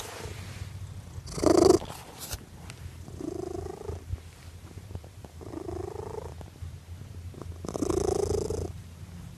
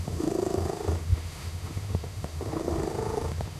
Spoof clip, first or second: second